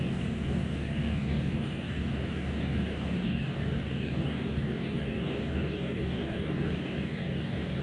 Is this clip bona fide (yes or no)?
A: no